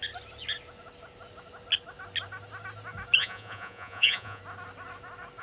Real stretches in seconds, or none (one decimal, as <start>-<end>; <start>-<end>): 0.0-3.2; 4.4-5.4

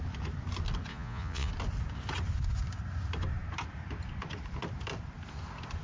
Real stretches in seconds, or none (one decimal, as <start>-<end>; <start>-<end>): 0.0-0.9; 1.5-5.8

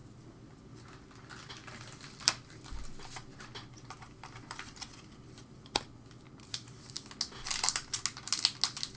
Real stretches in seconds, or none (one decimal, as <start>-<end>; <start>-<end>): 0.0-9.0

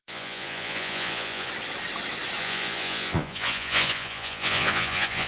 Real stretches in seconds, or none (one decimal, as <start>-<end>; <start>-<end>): 1.5-2.4

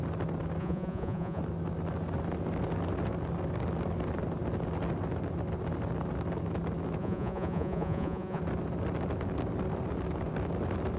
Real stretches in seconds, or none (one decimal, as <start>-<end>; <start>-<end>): 0.0-0.6; 1.4-7.0; 8.4-11.0

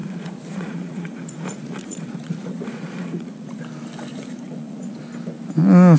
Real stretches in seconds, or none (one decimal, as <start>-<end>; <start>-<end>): 3.6-4.1; 5.0-6.0